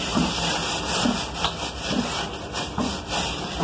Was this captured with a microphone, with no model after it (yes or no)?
yes